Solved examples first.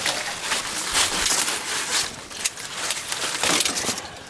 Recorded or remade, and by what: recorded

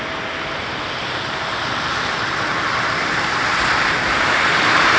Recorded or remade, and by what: recorded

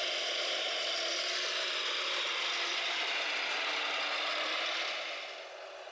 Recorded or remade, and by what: recorded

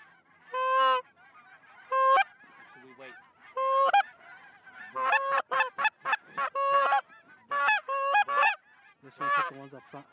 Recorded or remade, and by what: recorded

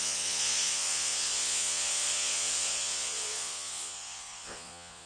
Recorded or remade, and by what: remade, vocoder, Vocos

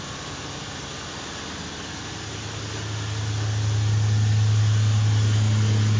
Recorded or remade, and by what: recorded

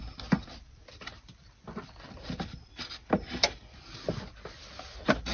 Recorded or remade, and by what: recorded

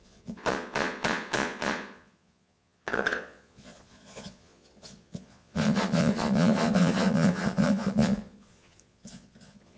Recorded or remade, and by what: remade, vocoder, Vocos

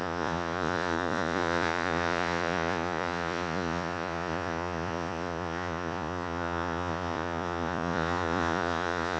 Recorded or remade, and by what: remade, vocoder, Vocos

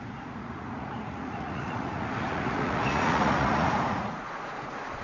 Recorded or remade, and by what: remade, vocoder, Vocos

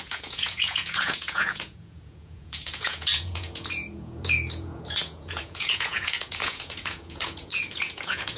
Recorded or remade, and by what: remade, vocoder, Vocos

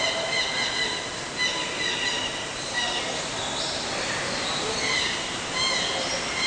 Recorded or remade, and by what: recorded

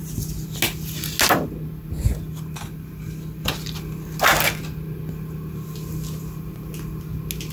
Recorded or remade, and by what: recorded